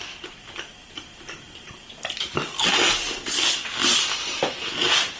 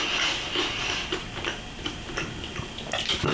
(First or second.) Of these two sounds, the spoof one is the first